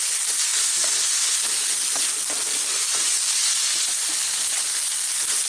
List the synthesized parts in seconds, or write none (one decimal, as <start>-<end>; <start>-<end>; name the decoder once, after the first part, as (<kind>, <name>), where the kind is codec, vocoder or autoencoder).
none